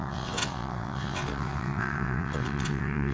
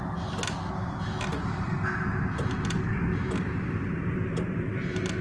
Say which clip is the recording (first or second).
second